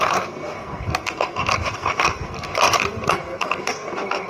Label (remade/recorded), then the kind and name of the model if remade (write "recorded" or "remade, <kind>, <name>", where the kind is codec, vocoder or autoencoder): remade, codec, SNAC